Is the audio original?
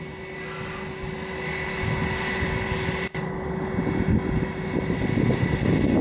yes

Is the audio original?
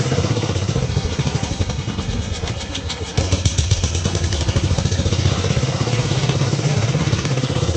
no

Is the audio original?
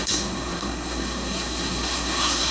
no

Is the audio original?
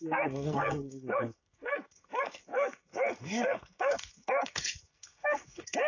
no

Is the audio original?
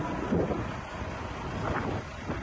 yes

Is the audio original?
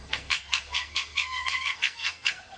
no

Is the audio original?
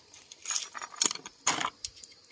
yes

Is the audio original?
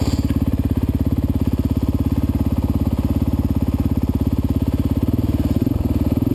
yes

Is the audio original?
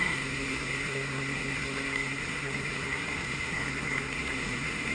no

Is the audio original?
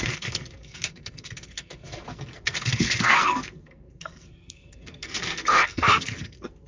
no